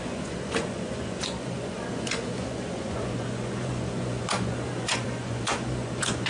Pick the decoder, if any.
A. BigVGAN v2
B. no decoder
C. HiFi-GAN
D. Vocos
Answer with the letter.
D